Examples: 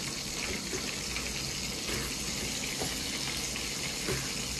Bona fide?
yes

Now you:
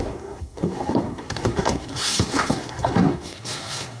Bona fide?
no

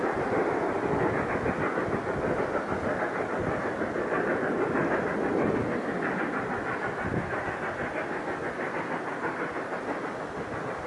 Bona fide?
yes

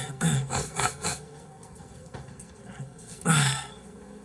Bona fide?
no